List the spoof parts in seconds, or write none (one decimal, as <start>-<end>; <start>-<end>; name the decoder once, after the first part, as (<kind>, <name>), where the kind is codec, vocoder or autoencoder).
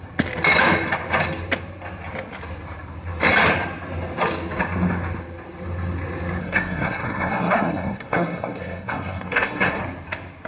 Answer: 6.4-9.8 (codec, SNAC)